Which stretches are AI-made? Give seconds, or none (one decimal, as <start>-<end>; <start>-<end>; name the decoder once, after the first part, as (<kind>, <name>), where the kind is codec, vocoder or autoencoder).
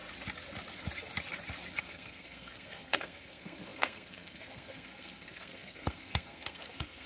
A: 1.8-7.1 (codec, SNAC)